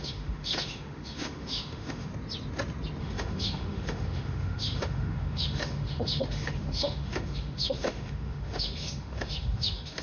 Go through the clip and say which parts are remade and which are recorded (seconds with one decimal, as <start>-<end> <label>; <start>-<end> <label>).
0.0-2.1 remade; 2.1-3.0 recorded; 3.0-10.0 remade

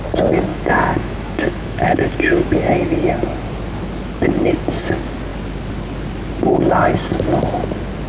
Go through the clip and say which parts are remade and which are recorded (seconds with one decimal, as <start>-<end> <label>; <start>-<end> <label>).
0.0-0.5 recorded; 0.5-2.8 remade; 2.8-8.1 recorded